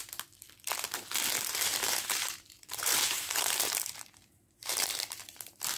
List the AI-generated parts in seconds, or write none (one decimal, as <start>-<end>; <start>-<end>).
1.7-5.2